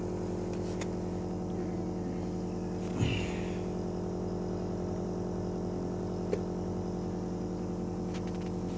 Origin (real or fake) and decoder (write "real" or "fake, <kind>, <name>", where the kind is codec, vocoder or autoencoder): real